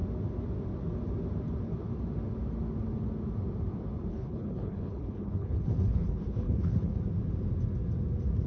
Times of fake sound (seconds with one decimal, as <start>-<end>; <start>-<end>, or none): 4.1-7.0